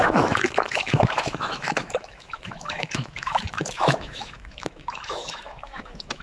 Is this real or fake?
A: fake